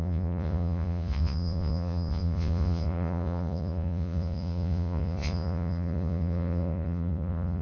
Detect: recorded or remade remade